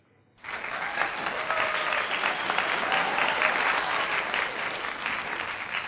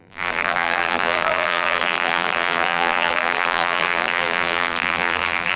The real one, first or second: first